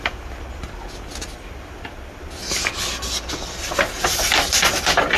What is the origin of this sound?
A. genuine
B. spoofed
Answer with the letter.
A